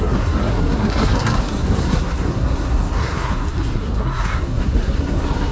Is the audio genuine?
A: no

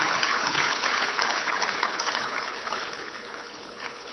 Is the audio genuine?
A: no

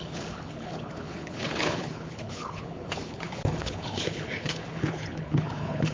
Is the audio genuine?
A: no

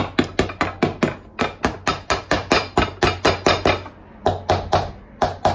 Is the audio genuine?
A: yes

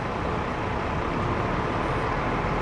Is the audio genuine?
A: yes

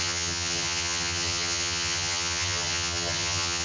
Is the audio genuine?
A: no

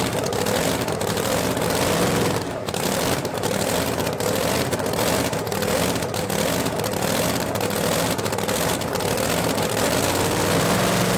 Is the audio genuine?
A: no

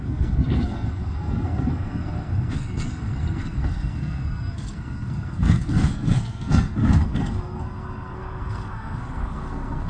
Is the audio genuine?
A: no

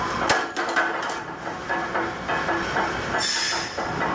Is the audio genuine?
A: yes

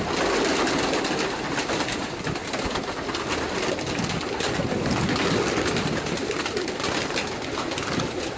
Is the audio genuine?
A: yes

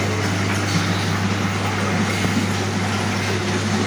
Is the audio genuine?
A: yes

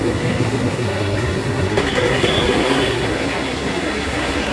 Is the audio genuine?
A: no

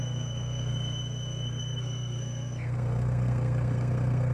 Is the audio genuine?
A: no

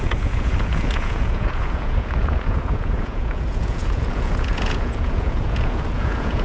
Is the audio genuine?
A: no